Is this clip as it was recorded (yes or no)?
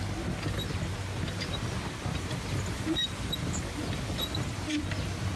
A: yes